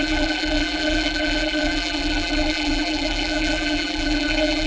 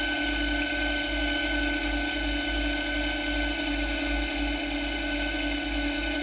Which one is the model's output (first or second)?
first